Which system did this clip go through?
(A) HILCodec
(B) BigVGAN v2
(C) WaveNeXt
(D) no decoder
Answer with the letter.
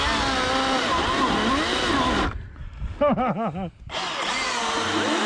D